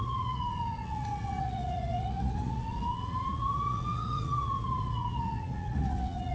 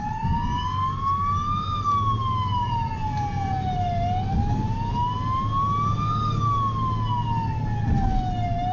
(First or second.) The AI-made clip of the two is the first